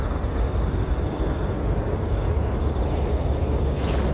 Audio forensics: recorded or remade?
recorded